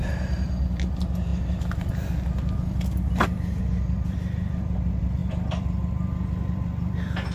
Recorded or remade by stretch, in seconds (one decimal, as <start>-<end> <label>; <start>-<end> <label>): 0.0-7.3 recorded